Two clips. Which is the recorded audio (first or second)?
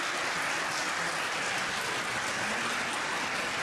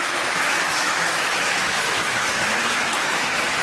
first